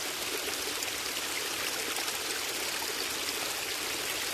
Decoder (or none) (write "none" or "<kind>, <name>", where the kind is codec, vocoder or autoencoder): none